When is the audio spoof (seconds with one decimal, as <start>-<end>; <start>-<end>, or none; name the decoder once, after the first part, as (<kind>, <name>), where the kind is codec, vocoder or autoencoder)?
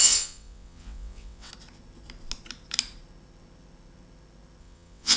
0.0-1.5 (vocoder, WaveNeXt); 4.6-5.2